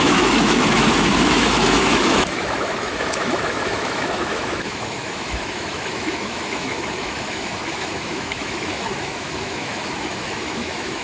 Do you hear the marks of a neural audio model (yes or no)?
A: yes